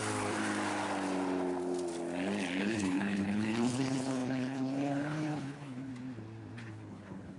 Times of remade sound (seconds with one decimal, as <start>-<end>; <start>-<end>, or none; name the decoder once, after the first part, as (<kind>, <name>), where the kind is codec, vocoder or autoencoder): 2.6-5.9 (codec, HILCodec); 6.7-7.4